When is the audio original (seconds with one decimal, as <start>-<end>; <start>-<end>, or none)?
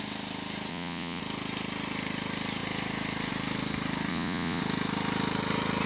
0.0-0.7; 1.2-4.1; 4.6-5.9